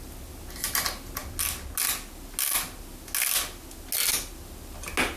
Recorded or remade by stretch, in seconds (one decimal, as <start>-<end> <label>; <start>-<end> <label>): 0.0-5.2 recorded